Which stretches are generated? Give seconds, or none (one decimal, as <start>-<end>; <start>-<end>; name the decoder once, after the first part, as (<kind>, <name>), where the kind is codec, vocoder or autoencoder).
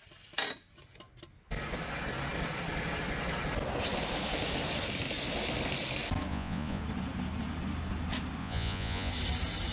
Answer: 6.3-6.8 (vocoder, Vocos); 8.4-9.1